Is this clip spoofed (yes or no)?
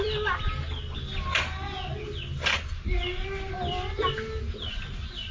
no